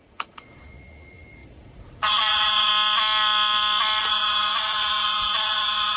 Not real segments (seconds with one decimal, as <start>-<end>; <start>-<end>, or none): 0.0-2.7; 4.0-6.0